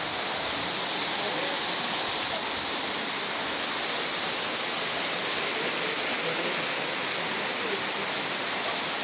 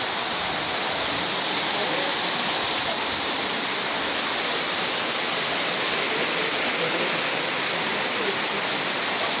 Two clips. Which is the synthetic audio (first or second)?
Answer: second